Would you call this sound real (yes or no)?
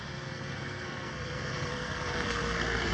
no